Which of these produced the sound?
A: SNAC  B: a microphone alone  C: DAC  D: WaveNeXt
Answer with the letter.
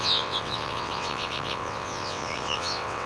D